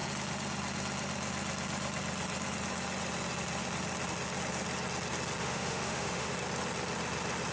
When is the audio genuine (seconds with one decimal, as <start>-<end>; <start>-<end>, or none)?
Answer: 0.0-5.4; 6.3-7.5